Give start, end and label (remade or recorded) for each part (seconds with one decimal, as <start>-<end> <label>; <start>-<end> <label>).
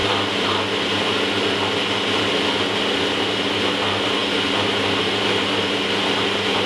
0.0-6.7 recorded